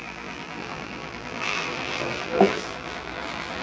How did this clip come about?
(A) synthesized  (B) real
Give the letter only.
A